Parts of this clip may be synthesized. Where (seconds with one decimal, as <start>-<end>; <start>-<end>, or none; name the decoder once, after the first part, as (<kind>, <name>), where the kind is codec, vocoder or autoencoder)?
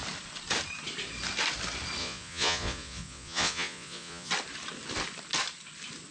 2.0-4.3 (vocoder, Vocos)